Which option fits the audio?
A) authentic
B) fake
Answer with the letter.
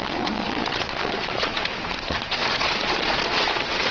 B